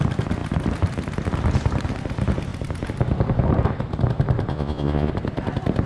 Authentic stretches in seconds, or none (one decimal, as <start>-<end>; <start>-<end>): 0.0-4.5; 5.1-5.9